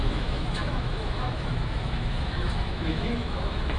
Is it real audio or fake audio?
fake